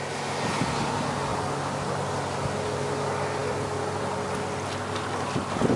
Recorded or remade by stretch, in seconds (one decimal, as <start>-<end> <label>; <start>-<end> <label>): 0.0-5.8 recorded